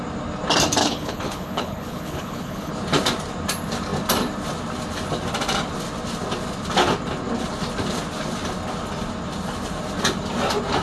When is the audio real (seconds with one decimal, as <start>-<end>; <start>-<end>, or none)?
0.0-0.8; 2.7-10.8